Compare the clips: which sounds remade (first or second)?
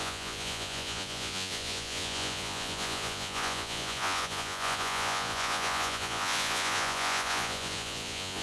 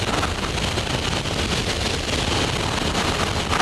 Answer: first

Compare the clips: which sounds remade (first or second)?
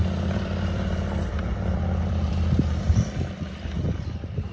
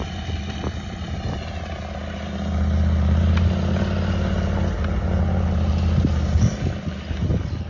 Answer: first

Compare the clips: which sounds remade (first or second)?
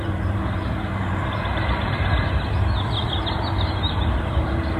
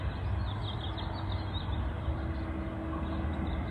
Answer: first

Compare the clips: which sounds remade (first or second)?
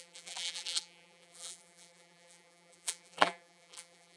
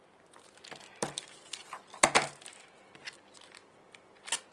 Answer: first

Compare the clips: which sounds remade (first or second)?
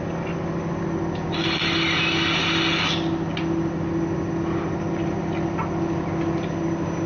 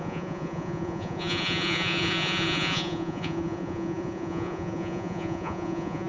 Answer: second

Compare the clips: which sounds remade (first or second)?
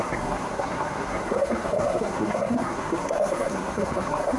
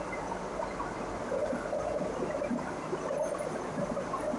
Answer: first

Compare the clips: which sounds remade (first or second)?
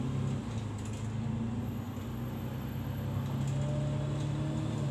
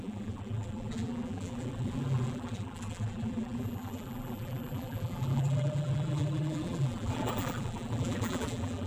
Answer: second